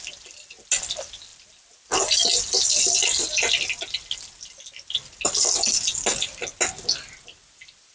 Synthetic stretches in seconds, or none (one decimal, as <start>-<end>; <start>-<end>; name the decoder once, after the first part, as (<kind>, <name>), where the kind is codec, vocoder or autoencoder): none